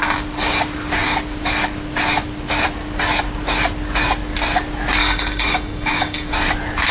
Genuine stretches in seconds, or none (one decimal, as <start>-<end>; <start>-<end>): 0.0-5.0; 6.3-6.9